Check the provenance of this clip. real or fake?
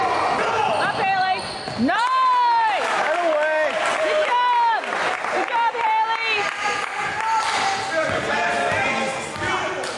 real